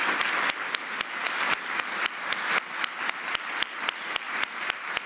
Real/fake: real